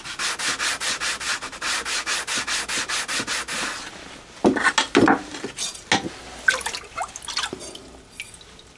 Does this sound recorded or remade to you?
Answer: recorded